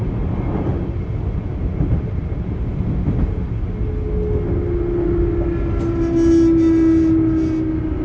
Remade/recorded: recorded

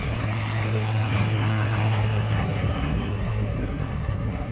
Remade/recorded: remade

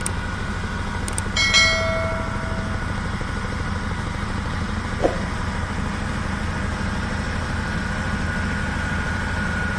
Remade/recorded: recorded